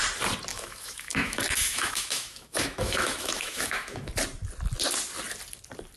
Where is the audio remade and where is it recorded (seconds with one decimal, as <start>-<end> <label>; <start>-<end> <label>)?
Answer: 0.0-0.5 recorded; 0.5-4.1 remade; 4.1-6.0 recorded